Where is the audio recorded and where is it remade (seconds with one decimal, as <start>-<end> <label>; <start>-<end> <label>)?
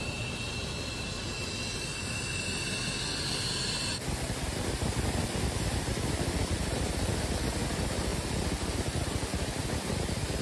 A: 0.0-10.4 recorded